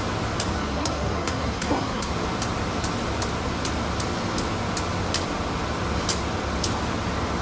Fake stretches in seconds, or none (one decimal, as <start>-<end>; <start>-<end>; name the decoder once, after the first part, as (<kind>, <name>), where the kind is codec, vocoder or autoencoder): 0.6-2.1 (codec, SNAC)